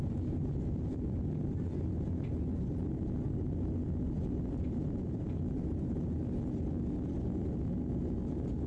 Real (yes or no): yes